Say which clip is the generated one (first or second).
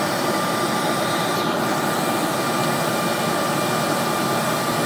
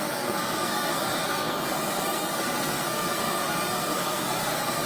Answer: second